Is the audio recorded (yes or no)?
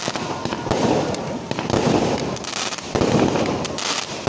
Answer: yes